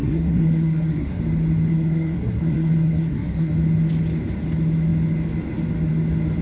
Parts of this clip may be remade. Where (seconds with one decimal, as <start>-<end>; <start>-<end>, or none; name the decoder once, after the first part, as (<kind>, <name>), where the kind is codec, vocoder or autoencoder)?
0.0-1.2 (codec, SNAC); 1.7-3.5